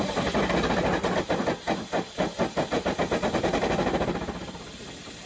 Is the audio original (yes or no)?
yes